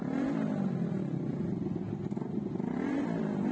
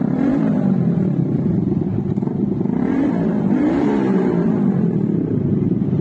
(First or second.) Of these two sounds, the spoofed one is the second